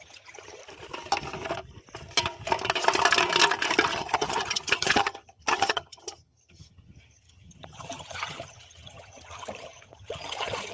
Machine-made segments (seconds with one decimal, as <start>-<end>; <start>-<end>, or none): 0.0-0.6; 3.9-10.7